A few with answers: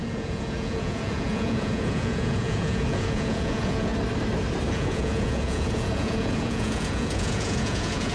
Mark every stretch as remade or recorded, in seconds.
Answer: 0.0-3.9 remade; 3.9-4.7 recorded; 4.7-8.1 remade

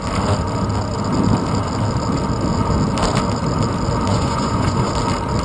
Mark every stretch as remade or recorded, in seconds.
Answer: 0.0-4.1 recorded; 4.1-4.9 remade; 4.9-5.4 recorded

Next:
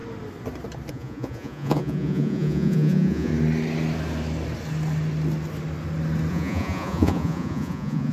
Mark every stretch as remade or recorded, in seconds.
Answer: 0.0-0.9 recorded; 0.9-3.3 remade; 3.3-6.3 recorded; 6.3-8.1 remade